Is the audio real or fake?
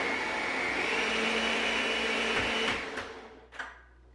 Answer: real